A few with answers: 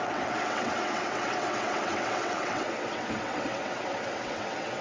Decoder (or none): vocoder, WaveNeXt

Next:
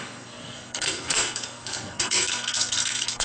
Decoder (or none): codec, SNAC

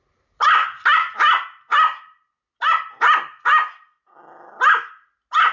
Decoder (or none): none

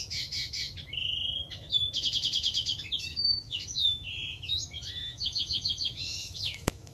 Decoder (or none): autoencoder, DAC-VAE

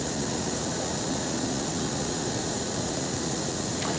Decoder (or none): vocoder, Vocos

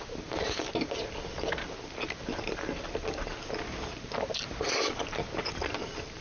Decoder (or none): none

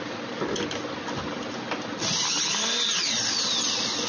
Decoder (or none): none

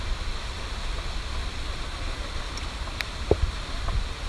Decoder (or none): none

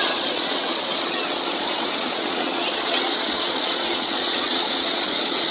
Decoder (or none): vocoder, Vocos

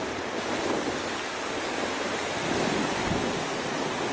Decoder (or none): none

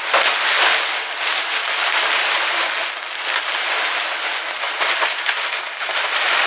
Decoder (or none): none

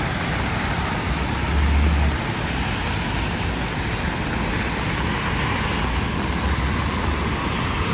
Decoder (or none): none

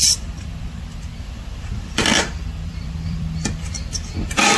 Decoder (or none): vocoder, BigVGAN v2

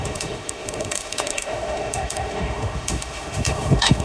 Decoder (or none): autoencoder, DAC-VAE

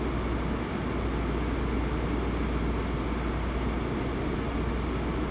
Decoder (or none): none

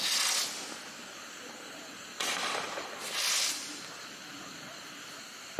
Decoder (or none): none